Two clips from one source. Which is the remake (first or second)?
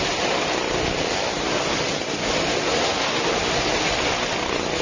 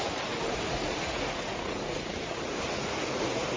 second